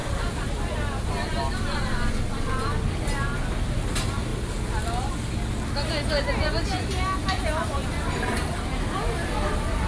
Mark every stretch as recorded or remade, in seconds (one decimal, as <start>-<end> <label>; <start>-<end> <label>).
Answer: 0.0-9.9 recorded

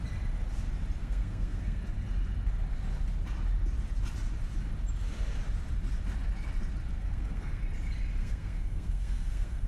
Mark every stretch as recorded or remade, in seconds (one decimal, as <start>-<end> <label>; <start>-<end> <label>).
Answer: 0.0-1.0 recorded; 1.0-1.8 remade; 1.8-6.9 recorded; 6.9-7.6 remade; 7.6-8.2 recorded; 8.2-9.7 remade